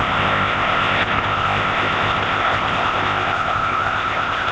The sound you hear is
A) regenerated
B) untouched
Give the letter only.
A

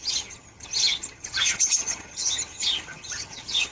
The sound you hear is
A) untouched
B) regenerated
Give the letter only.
B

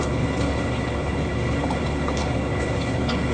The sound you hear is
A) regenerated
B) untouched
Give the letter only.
A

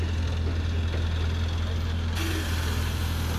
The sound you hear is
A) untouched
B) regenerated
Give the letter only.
A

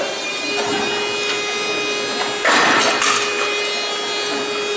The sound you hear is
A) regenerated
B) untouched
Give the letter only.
B